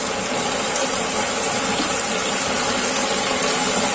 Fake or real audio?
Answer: real